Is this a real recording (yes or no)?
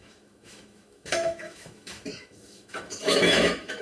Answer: no